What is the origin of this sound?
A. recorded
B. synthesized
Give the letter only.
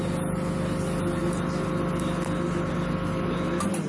A